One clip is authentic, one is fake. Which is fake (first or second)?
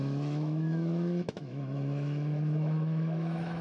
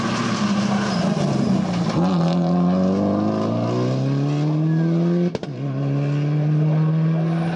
first